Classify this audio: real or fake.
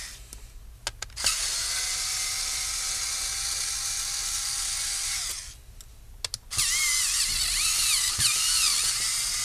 real